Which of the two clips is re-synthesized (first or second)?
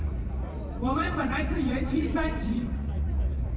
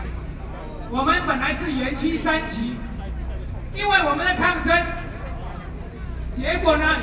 first